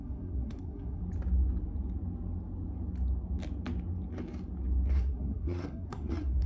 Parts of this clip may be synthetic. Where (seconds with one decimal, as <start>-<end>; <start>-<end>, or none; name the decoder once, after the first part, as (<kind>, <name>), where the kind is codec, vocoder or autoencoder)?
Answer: 0.0-1.0 (codec, SNAC); 4.9-6.5